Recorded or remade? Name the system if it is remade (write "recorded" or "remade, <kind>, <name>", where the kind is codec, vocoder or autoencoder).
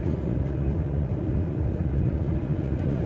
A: remade, vocoder, Vocos